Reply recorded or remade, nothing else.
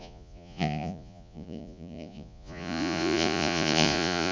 remade